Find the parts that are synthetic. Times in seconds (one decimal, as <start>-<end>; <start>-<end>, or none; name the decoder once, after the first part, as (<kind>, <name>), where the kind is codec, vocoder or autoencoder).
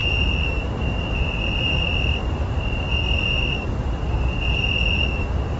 0.0-2.6 (vocoder, BigVGAN v2)